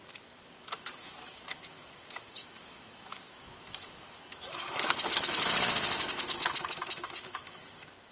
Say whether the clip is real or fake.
fake